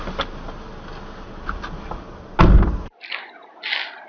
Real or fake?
real